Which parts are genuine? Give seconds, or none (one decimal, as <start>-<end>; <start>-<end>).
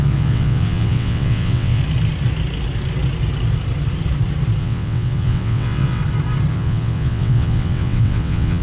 1.8-4.6; 6.0-6.5